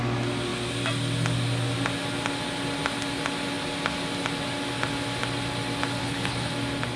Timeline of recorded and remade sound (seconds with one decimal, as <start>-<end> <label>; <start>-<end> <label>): 0.0-6.0 recorded; 6.0-6.5 remade; 6.5-7.0 recorded